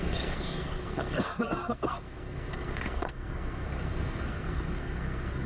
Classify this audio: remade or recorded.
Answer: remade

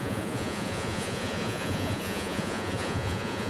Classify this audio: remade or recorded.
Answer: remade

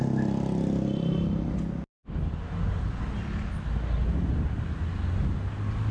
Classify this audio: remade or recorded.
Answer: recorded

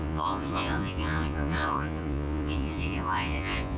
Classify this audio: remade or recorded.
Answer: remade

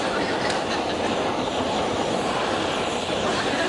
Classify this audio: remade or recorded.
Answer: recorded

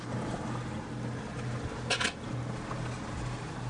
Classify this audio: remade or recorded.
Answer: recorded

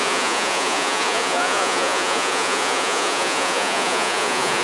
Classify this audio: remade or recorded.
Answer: remade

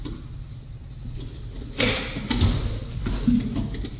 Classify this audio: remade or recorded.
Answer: recorded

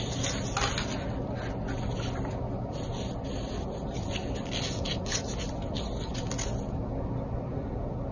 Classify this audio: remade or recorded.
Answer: recorded